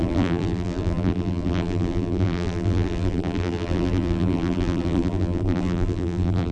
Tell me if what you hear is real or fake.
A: fake